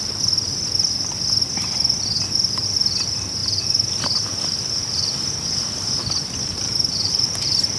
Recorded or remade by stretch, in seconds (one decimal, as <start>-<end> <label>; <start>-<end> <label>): 0.0-3.4 recorded; 3.4-7.8 remade